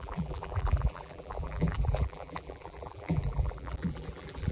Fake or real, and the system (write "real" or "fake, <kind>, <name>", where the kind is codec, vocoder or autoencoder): fake, vocoder, BigVGAN v2